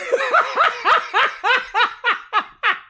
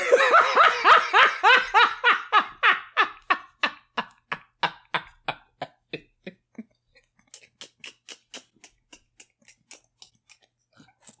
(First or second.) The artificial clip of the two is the first